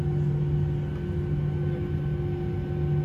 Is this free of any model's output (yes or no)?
yes